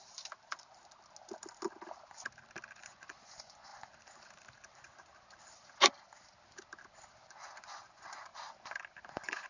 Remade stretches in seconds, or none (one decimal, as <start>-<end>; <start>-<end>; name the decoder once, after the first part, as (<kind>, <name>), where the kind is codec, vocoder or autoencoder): 2.8-3.7 (vocoder, Vocos); 7.3-8.3; 9.1-9.5